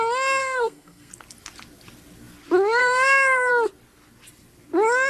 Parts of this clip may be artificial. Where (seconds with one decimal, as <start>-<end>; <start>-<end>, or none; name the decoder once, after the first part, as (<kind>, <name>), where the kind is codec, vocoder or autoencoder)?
0.4-1.1 (codec, SNAC); 2.8-3.5